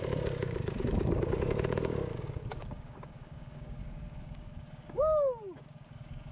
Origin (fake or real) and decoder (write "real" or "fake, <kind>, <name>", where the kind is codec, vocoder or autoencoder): fake, codec, DAC